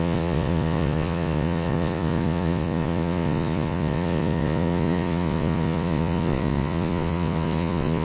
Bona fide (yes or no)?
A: no